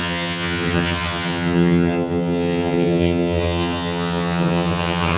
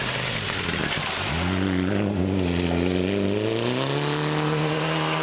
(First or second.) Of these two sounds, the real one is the second